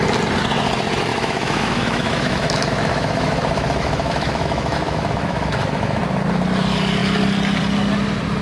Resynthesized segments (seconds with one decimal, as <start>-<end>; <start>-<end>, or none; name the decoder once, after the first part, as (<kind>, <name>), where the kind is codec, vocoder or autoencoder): 1.1-6.0 (autoencoder, DAC-VAE)